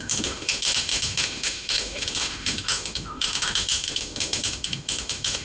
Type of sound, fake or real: fake